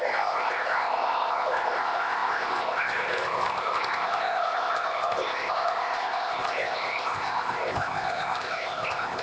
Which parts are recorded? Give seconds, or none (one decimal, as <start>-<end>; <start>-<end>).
none